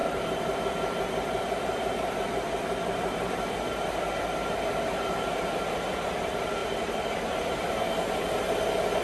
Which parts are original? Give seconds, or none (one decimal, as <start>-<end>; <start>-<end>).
4.0-6.6; 7.2-9.0